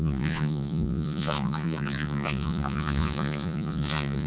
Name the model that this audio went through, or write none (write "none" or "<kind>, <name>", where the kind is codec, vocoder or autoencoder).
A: vocoder, Vocos